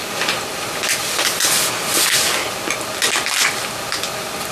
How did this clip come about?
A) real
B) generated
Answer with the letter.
A